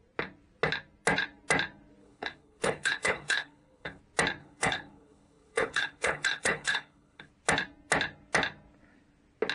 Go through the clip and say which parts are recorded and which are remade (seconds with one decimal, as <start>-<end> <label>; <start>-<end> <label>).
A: 0.0-2.0 recorded; 2.0-4.0 remade; 4.0-4.4 recorded; 4.4-7.3 remade; 7.3-9.5 recorded

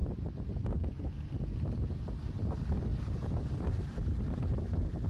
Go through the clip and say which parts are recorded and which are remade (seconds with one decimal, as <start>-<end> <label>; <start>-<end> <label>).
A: 0.0-1.1 remade; 1.1-5.1 recorded

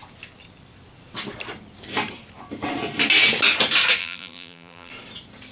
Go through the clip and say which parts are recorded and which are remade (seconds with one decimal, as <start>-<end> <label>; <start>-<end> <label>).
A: 0.0-4.0 recorded; 4.0-4.9 remade; 4.9-5.5 recorded